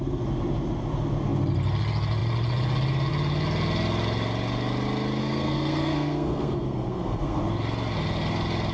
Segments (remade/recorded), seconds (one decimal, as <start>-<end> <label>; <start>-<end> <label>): 0.0-5.2 recorded; 5.2-7.4 remade; 7.4-8.7 recorded